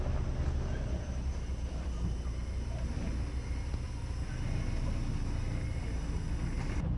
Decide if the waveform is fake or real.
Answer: real